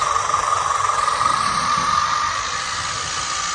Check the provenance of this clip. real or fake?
real